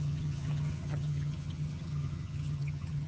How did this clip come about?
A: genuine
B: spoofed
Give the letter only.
B